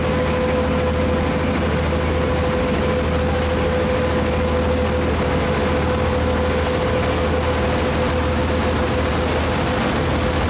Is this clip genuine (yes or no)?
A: yes